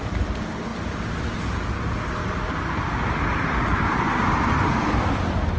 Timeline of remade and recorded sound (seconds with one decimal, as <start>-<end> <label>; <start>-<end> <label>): 0.0-5.6 recorded